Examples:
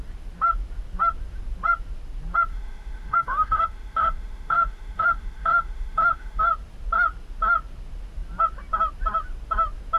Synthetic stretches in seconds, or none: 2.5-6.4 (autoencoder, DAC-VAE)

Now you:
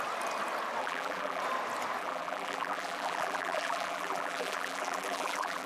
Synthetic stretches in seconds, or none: 0.8-1.4 (vocoder, BigVGAN v2); 2.0-5.7

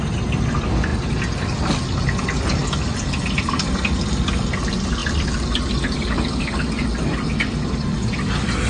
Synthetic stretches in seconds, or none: none